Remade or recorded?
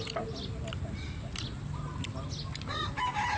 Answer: recorded